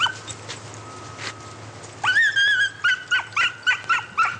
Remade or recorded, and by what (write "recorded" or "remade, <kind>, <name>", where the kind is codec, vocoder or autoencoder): recorded